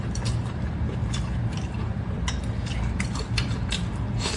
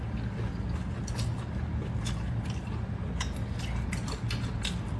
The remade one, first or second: first